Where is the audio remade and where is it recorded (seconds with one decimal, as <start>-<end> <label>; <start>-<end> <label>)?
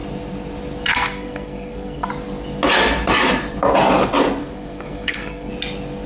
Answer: 0.0-0.9 recorded; 0.9-2.1 remade; 2.1-4.4 recorded; 4.4-5.5 remade; 5.5-6.1 recorded